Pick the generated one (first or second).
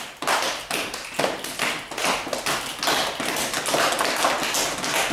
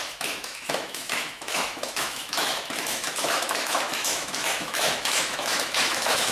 second